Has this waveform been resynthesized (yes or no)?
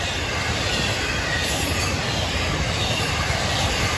no